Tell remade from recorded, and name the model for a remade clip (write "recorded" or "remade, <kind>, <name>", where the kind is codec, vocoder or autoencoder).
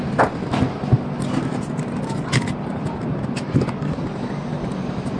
recorded